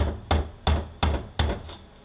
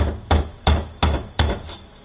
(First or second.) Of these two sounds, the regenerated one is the second